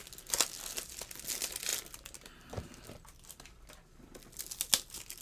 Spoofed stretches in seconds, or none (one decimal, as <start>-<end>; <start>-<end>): none